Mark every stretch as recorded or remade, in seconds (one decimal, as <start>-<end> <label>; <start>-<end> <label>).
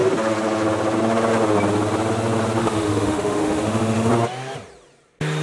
0.0-2.6 recorded; 2.6-4.1 remade; 4.1-5.4 recorded